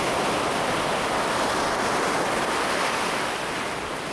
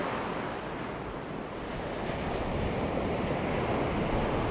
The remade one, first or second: first